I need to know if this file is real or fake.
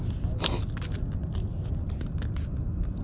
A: real